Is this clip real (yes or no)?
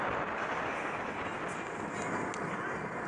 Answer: yes